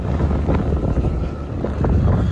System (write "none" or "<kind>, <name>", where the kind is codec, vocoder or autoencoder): none